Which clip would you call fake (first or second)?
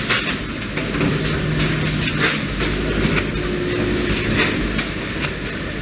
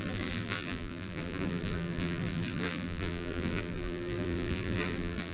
second